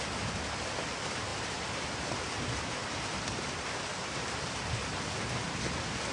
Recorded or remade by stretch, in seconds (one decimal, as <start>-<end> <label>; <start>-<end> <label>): 0.0-1.3 recorded; 1.3-2.1 remade; 2.1-3.9 recorded; 3.9-4.9 remade; 4.9-6.1 recorded